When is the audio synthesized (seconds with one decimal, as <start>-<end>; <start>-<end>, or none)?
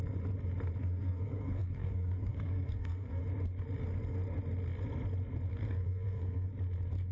0.8-3.2; 5.5-6.5